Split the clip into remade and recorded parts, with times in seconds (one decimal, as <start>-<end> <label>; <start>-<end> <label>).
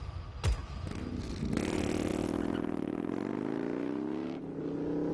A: 0.0-0.6 recorded; 0.6-1.2 remade; 1.2-5.1 recorded